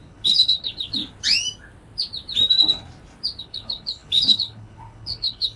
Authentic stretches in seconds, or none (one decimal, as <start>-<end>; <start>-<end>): 1.0-3.4